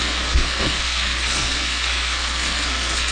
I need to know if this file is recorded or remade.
remade